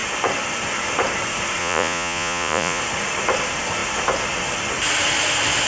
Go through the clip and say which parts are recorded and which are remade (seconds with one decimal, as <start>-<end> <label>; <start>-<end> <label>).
0.0-1.6 recorded; 1.6-2.8 remade; 2.8-5.7 recorded